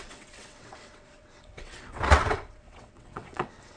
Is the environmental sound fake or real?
fake